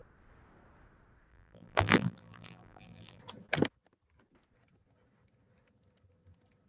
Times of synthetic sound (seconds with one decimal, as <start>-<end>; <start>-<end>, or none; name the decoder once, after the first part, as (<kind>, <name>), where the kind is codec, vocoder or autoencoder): 1.3-3.2 (vocoder, BigVGAN v2)